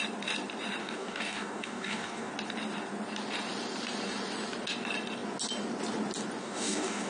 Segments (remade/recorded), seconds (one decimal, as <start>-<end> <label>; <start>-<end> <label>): 0.0-0.8 recorded; 0.8-2.3 remade; 2.3-6.4 recorded; 6.4-7.1 remade